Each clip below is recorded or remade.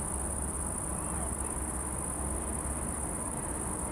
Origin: recorded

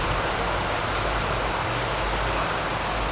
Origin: recorded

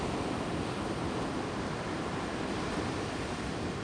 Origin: remade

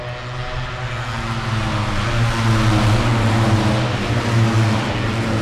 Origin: recorded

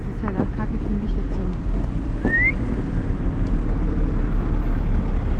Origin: recorded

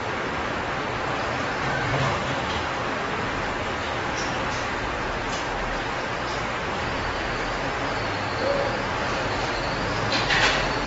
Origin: recorded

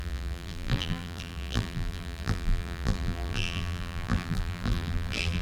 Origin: remade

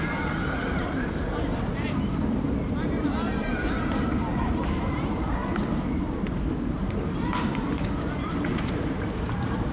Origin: remade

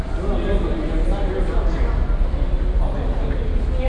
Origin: recorded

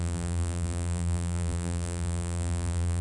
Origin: remade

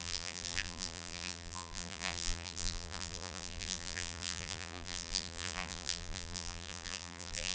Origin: remade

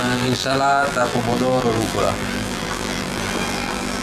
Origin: remade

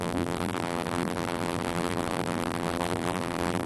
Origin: remade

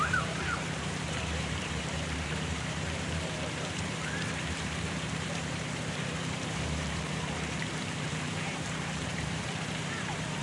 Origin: remade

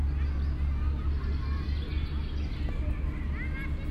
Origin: recorded